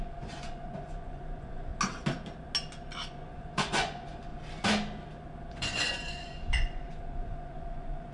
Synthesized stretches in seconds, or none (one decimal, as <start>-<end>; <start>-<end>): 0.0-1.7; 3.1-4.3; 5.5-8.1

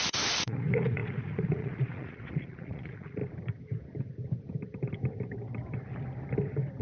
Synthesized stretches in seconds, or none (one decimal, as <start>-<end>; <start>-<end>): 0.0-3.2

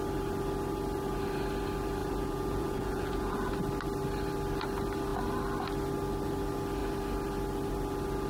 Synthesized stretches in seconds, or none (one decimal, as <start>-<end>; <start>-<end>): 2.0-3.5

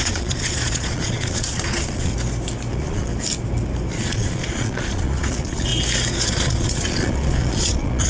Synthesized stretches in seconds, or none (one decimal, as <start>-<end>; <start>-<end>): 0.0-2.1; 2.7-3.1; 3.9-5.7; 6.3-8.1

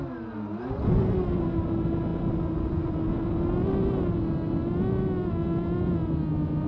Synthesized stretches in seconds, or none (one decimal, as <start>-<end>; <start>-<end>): none

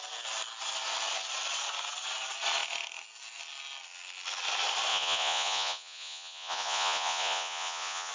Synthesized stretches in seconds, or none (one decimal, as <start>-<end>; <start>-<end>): 4.9-8.1

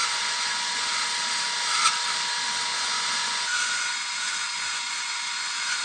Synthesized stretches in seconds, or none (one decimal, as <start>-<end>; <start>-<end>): 0.0-1.0; 2.7-5.8

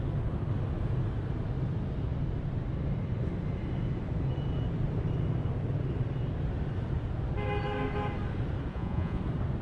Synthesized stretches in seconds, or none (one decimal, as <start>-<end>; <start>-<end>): 8.7-9.2